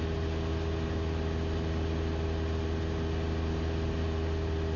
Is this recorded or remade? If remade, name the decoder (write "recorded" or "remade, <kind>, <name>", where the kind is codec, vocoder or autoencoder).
recorded